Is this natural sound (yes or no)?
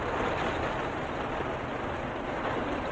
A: yes